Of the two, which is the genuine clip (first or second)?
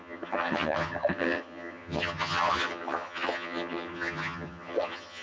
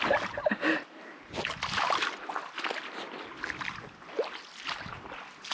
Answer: second